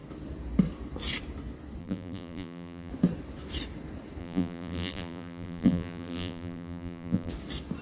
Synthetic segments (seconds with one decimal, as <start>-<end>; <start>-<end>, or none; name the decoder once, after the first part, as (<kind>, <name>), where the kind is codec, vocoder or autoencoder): 1.8-2.9 (vocoder, BigVGAN v2); 4.2-7.3